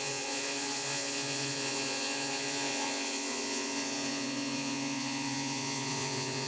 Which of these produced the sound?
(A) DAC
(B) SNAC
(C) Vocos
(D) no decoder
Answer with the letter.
C